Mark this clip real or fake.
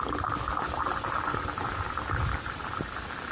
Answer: fake